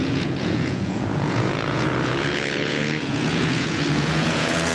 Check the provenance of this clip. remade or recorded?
remade